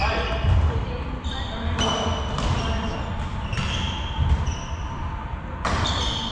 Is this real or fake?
real